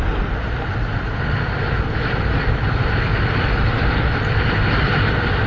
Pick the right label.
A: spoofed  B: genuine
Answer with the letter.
B